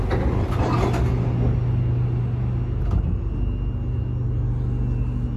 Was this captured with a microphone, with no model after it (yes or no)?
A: yes